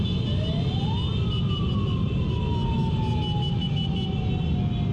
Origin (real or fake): real